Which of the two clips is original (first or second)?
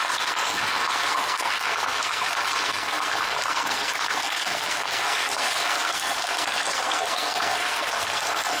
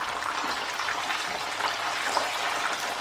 second